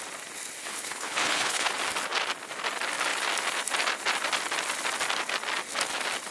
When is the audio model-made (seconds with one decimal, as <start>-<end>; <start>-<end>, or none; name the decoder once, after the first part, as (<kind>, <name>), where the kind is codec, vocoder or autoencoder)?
0.6-1.7 (codec, HILCodec)